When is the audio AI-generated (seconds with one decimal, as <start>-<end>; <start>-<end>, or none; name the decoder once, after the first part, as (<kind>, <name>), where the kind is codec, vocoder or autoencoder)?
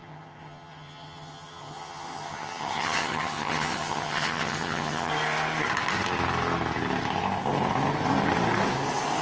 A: 0.0-5.1 (vocoder, HiFi-GAN)